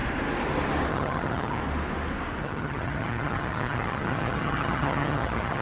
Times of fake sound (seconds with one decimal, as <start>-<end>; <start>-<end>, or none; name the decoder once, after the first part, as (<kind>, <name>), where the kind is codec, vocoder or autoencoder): 0.9-1.6 (vocoder, HiFi-GAN); 2.4-5.6